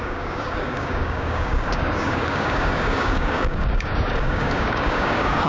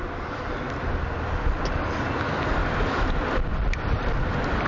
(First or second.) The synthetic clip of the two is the first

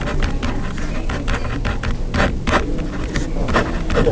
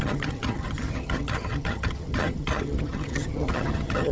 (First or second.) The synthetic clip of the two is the second